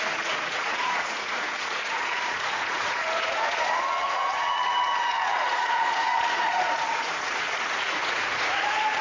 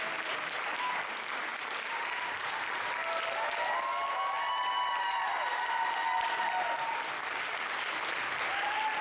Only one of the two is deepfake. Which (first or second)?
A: first